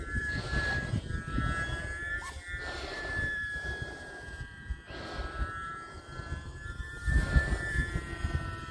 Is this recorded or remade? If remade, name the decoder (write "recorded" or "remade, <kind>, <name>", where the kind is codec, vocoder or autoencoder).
remade, vocoder, BigVGAN v2